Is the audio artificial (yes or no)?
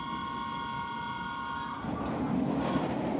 no